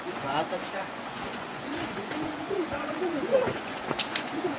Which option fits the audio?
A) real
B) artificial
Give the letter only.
B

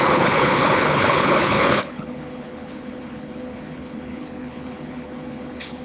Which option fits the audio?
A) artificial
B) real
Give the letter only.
A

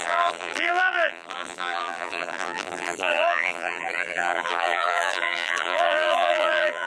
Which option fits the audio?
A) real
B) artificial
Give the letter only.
B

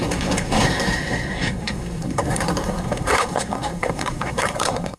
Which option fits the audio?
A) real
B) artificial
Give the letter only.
B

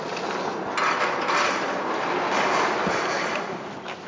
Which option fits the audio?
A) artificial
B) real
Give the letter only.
B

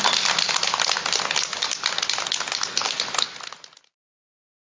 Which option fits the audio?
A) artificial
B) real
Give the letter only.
B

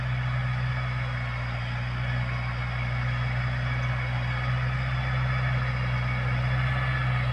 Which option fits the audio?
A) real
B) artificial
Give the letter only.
A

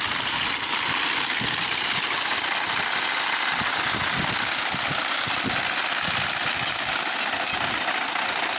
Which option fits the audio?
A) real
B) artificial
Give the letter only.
A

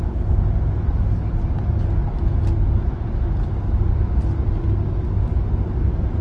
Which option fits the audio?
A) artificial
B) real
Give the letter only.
B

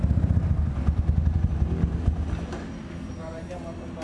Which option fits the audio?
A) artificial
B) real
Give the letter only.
B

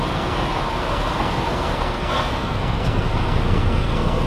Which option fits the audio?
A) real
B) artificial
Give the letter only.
B